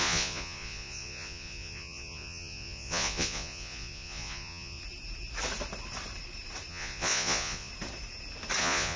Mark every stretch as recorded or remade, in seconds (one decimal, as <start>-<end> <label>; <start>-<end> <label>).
0.0-4.8 remade; 4.8-6.7 recorded; 6.7-7.7 remade; 7.7-8.6 recorded; 8.6-9.0 remade